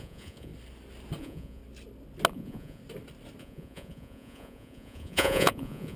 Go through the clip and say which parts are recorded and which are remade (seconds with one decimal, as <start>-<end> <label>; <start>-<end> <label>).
0.0-0.5 remade; 0.5-1.2 recorded; 1.2-1.6 remade; 1.6-2.3 recorded; 2.3-2.8 remade; 2.8-3.4 recorded; 3.4-6.0 remade